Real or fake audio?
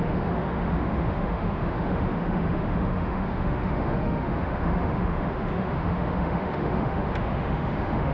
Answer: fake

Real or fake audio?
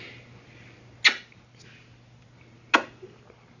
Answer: real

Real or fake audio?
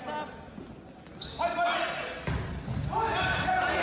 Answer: real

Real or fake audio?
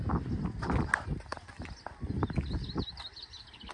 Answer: real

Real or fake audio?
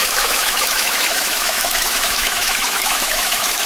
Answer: fake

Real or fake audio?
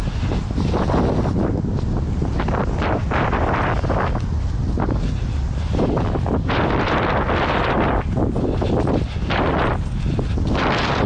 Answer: real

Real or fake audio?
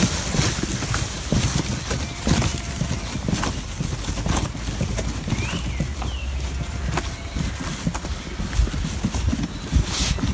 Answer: real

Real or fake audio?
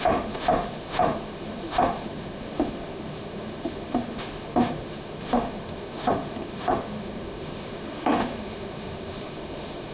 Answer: fake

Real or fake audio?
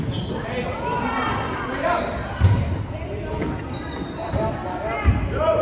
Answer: real